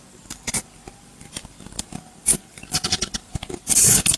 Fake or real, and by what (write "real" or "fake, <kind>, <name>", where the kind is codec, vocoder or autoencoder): fake, vocoder, BigVGAN v2